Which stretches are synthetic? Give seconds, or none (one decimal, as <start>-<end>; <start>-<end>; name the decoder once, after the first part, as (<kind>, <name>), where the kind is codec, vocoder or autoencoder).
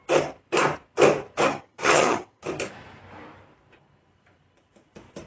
1.5-2.4 (vocoder, HiFi-GAN)